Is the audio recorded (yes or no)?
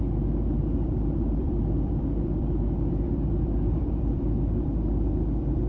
no